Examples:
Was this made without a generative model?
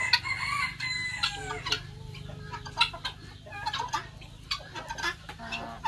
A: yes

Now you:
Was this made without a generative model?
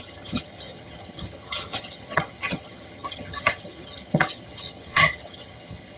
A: no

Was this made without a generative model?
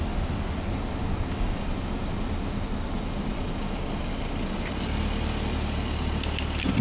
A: yes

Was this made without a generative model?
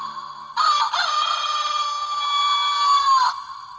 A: yes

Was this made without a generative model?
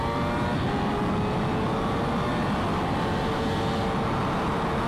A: yes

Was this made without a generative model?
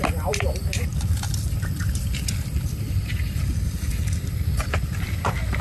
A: no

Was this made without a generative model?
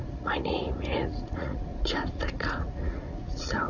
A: no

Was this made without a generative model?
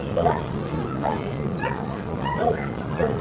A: no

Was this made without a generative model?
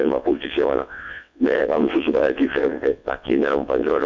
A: no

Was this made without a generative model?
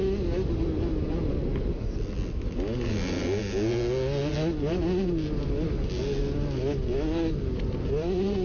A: yes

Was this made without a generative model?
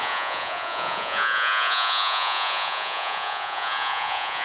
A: no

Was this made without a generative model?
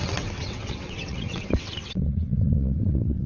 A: no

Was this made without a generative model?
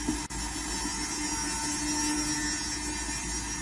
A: yes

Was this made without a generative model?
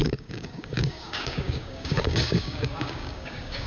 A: no